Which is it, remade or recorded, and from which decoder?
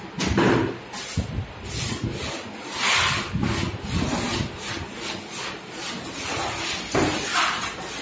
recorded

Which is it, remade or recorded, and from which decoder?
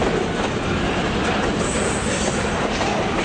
recorded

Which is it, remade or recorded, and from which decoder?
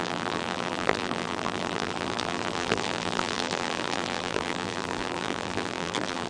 remade, vocoder, BigVGAN v2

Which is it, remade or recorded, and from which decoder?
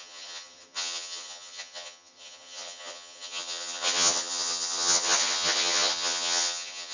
remade, vocoder, HiFi-GAN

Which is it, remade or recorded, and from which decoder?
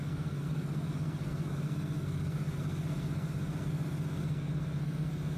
remade, codec, SNAC